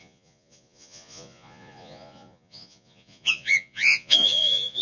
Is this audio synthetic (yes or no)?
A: yes